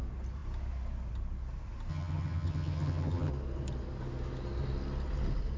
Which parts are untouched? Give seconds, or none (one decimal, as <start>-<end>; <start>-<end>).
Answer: 0.0-1.9; 3.3-5.6